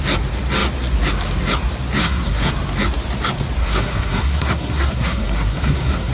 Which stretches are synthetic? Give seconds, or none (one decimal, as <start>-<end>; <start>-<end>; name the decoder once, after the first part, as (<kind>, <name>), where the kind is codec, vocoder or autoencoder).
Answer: 2.0-2.5 (codec, SNAC); 3.6-6.1